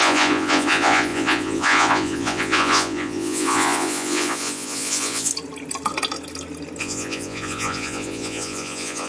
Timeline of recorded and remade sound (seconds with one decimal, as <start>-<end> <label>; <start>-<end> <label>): 0.0-5.3 remade; 5.3-6.8 recorded; 6.8-9.1 remade